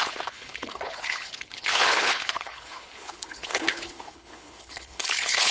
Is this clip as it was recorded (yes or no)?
no